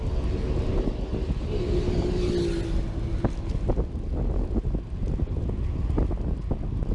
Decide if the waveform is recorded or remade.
recorded